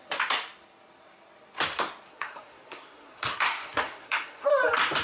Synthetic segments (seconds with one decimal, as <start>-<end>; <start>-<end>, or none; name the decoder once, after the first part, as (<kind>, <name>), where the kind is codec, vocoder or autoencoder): 2.1-4.5 (codec, SNAC)